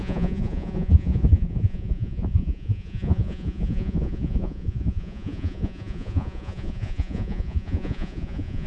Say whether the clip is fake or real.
fake